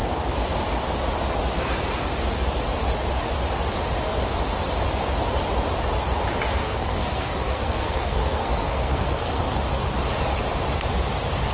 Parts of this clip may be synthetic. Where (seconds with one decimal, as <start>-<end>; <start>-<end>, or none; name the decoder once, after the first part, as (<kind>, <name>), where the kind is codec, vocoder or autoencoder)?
6.6-9.6 (codec, SNAC)